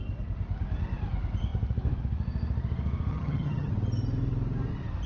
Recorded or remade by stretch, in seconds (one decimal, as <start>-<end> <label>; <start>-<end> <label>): 0.0-3.1 recorded; 3.1-3.7 remade; 3.7-5.1 recorded